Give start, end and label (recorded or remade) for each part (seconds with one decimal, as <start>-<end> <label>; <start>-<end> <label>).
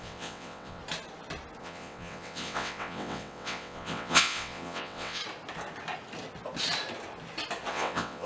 0.0-0.8 remade; 0.8-1.6 recorded; 1.6-5.2 remade; 5.2-7.7 recorded; 7.7-8.3 remade